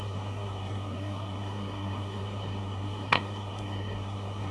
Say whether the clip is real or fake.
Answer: fake